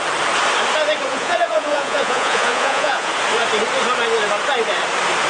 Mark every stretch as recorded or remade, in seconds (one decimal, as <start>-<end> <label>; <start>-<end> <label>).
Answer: 0.0-1.1 recorded; 1.1-3.1 remade; 3.1-5.3 recorded